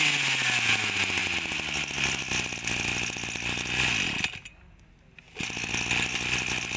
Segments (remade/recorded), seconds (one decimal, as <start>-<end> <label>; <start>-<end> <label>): 0.0-6.8 recorded